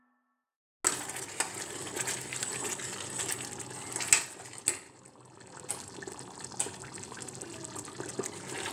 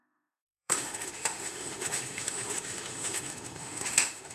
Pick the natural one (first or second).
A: first